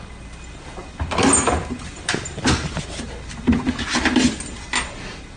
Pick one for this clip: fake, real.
real